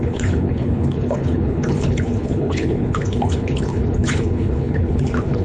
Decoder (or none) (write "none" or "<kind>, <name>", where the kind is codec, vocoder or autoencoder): codec, HILCodec